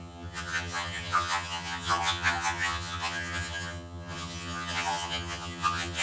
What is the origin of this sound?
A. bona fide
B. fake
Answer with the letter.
B